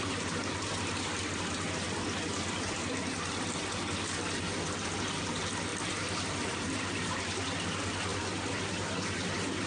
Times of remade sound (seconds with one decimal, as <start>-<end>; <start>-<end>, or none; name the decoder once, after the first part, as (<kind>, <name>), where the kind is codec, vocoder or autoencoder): 5.7-7.0 (vocoder, BigVGAN v2)